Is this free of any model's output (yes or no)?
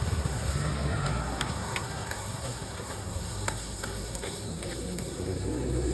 no